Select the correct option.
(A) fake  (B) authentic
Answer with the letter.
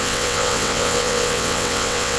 A